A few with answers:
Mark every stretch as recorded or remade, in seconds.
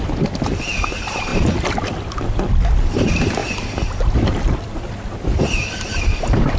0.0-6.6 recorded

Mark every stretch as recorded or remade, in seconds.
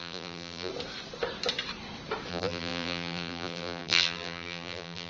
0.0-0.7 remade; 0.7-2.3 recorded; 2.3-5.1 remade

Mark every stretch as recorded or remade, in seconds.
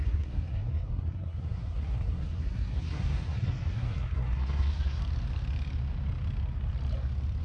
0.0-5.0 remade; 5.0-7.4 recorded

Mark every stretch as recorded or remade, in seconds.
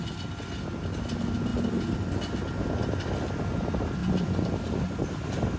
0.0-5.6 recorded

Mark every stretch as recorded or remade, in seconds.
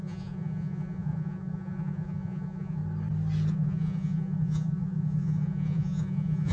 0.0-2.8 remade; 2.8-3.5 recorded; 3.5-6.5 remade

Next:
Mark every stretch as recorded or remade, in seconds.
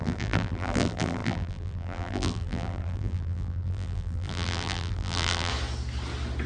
0.0-5.5 remade; 5.5-6.5 recorded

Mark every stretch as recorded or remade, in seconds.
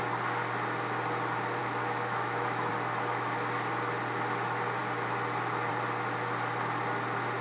0.0-1.6 recorded; 1.6-2.7 remade; 2.7-7.4 recorded